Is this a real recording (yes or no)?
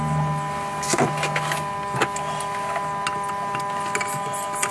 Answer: yes